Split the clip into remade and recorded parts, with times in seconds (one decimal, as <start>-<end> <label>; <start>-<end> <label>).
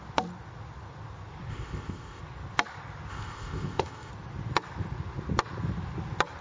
0.0-1.5 recorded; 1.5-2.2 remade; 2.2-3.1 recorded; 3.1-4.1 remade; 4.1-6.4 recorded